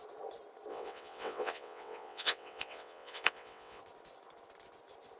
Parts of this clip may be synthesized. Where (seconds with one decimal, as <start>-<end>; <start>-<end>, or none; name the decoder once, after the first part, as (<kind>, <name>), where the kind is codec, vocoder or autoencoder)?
0.7-3.8 (vocoder, WaveNeXt)